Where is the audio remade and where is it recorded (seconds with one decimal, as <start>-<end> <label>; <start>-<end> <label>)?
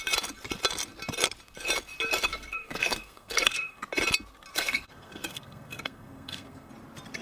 0.0-2.3 recorded; 2.3-3.8 remade; 3.8-4.5 recorded; 4.5-6.7 remade; 6.7-7.2 recorded